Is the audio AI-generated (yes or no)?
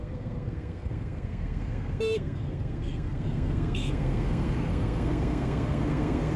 yes